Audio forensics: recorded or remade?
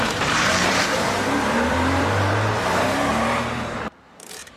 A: remade